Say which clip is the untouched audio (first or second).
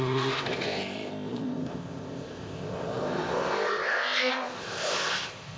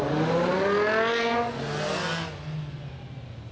second